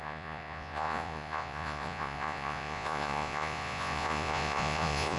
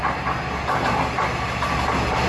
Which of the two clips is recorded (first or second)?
second